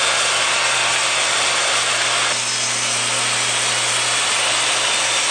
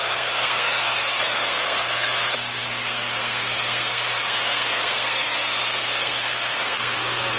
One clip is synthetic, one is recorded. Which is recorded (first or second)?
first